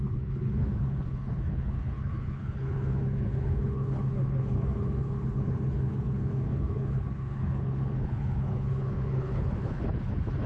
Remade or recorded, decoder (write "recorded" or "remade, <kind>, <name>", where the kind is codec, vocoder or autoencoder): remade, codec, HILCodec